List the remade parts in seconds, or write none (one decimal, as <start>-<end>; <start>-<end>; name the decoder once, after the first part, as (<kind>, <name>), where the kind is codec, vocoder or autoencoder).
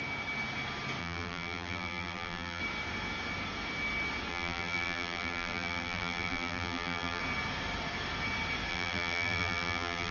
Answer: 1.0-2.6 (vocoder, BigVGAN v2); 4.3-7.2; 8.7-10.1